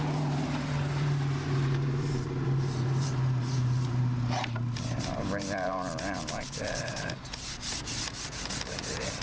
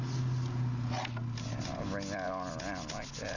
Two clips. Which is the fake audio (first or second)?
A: first